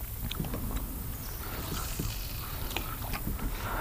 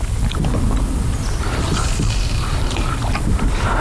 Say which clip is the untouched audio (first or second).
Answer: first